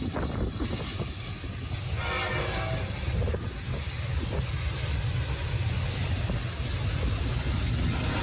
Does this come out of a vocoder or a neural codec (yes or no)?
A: no